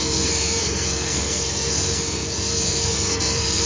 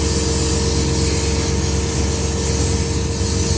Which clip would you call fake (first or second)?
first